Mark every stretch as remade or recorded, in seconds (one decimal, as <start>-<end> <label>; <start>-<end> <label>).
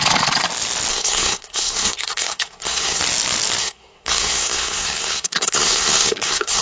0.0-0.9 recorded; 0.9-3.0 remade; 3.0-3.6 recorded; 3.6-6.6 remade